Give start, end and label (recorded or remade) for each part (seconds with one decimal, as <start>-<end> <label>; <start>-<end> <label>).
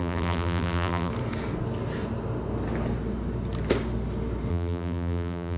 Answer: 0.0-1.1 remade; 1.1-4.5 recorded; 4.5-5.6 remade